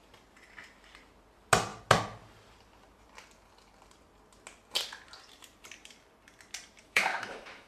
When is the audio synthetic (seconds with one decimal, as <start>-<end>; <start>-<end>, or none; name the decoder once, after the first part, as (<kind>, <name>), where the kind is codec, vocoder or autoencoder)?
6.8-7.7 (autoencoder, DAC-VAE)